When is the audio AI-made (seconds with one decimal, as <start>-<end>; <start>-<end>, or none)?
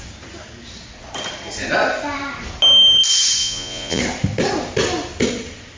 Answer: 3.4-4.0